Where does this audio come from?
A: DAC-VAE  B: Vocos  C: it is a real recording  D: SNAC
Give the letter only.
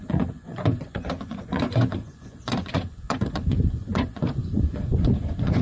B